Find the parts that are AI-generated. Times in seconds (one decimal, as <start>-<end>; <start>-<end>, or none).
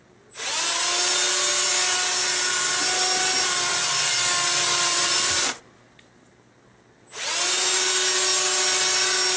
1.5-5.6